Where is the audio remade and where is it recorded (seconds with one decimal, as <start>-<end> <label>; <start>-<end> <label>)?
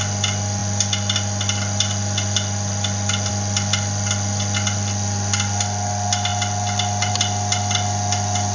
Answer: 0.0-8.5 recorded